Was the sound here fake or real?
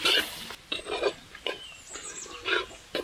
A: real